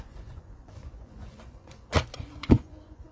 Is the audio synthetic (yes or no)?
yes